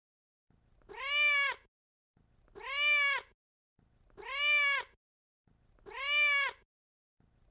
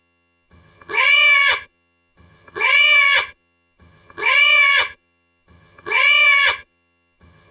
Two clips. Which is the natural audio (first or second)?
first